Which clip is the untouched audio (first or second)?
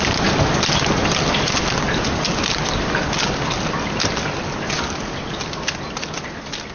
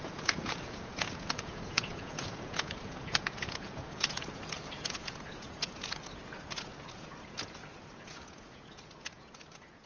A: first